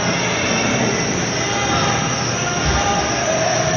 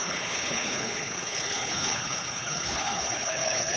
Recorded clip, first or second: first